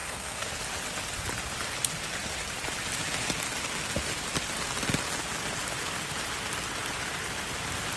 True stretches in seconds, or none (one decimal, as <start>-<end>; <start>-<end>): 0.5-8.0